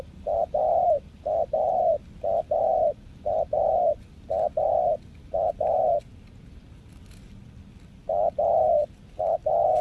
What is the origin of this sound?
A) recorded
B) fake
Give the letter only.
A